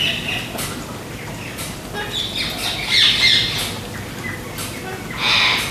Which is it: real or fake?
real